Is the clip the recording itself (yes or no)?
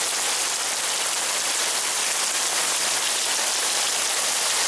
yes